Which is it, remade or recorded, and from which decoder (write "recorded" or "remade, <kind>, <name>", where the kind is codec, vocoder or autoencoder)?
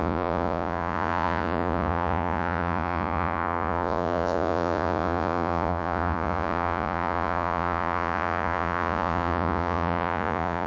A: remade, vocoder, Vocos